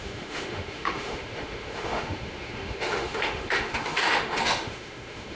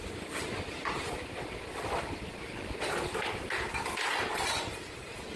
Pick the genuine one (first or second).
second